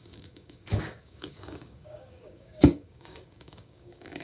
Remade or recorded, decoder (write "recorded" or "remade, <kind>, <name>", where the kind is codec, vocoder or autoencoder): remade, codec, DAC